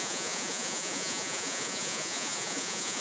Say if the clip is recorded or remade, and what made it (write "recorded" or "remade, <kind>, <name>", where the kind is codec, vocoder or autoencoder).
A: remade, vocoder, Vocos